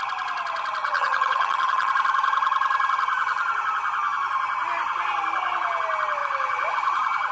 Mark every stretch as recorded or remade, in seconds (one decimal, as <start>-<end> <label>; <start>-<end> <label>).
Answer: 0.0-0.8 recorded; 0.8-1.9 remade; 1.9-7.3 recorded